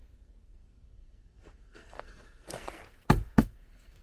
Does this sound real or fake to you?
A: fake